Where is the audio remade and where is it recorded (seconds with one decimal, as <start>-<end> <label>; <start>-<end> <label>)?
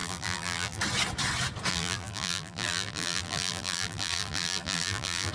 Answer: 0.0-0.8 remade; 0.8-1.7 recorded; 1.7-5.3 remade